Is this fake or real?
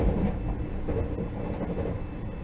real